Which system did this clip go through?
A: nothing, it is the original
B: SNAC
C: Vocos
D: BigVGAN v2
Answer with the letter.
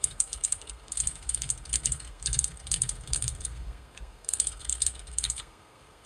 B